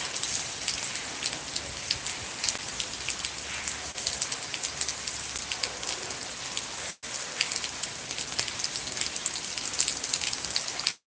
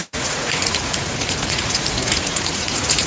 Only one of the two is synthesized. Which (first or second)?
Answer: second